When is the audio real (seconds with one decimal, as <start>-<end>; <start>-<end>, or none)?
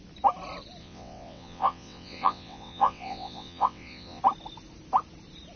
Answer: 0.0-0.8; 4.2-5.6